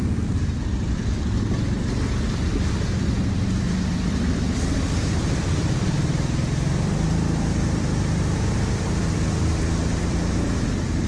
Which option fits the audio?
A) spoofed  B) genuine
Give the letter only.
A